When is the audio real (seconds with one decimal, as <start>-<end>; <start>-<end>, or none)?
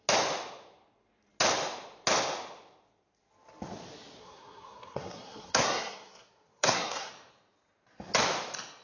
0.0-4.2; 7.1-8.8